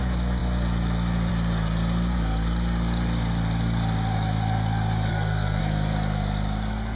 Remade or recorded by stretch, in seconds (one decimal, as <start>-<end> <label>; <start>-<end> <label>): 0.0-5.1 recorded; 5.1-5.6 remade; 5.6-7.0 recorded